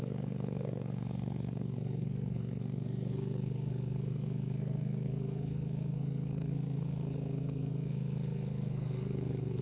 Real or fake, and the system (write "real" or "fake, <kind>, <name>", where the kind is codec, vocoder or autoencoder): fake, codec, SNAC